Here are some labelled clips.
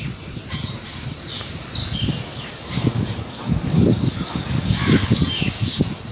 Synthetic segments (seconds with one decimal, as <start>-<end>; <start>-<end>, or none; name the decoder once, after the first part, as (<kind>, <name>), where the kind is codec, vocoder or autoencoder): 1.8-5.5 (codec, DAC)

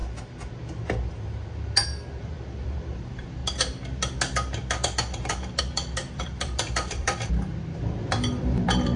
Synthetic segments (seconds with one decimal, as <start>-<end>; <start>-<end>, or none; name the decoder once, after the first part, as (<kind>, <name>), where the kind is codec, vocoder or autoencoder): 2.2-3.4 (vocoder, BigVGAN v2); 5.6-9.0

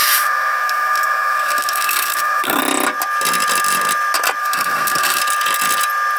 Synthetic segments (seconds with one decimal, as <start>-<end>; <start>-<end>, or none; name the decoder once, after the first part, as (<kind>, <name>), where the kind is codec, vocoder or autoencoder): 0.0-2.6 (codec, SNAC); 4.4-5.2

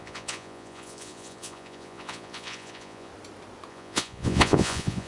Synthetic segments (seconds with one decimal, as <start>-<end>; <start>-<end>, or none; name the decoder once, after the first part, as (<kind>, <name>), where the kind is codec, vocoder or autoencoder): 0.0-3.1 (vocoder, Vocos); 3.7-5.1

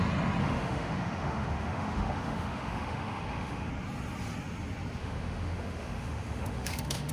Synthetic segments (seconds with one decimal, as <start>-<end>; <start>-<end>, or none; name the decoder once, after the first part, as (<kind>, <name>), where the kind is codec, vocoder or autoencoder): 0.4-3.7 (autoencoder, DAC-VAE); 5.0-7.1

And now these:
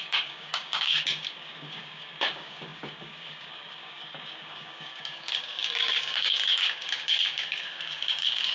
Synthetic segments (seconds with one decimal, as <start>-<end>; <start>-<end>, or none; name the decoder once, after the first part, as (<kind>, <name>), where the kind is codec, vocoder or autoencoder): 0.0-8.5 (codec, DAC)

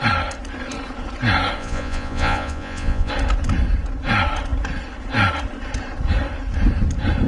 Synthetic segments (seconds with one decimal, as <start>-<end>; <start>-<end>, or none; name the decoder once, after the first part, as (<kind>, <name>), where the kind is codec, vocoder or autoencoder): 1.6-3.1 (vocoder, Vocos)